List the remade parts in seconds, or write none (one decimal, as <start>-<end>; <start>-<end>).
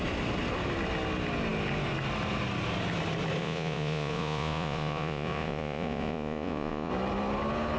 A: 3.4-6.9